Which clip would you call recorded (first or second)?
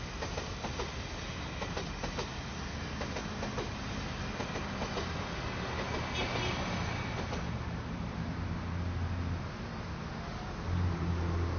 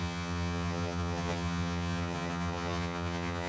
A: first